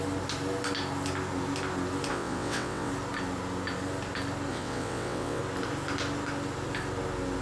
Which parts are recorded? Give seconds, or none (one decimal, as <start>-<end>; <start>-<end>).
0.0-2.1; 2.9-4.5; 5.4-7.4